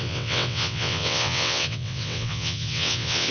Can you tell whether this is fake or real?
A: fake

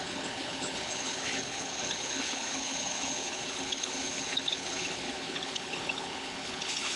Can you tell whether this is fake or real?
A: fake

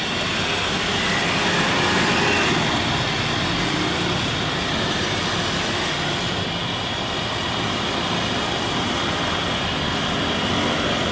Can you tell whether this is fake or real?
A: real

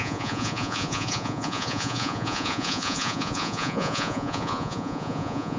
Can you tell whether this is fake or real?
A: fake